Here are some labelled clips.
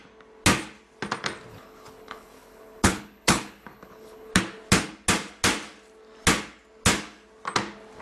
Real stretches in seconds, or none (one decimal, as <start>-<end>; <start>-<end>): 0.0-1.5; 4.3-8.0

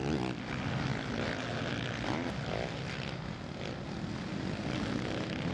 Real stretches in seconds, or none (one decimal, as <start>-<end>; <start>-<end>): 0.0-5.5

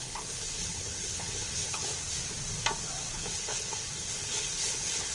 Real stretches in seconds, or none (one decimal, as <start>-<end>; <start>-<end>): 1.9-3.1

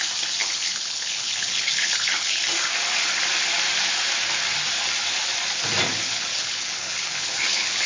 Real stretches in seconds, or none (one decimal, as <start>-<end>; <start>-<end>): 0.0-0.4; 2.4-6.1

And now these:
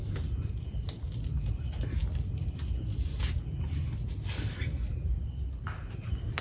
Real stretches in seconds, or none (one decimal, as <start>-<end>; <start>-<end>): 0.0-6.4

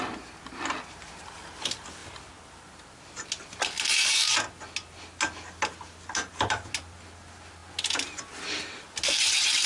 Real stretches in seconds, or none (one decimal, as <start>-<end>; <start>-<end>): 0.0-9.7